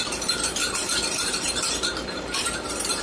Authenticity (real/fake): fake